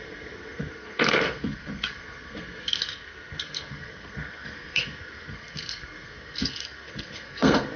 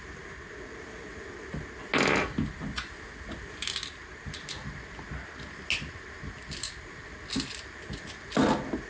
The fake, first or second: first